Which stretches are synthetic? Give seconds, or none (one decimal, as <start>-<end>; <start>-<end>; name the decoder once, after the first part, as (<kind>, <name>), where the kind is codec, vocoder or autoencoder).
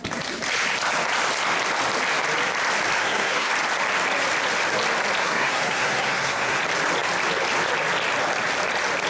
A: 3.0-3.5 (codec, SNAC); 5.2-6.6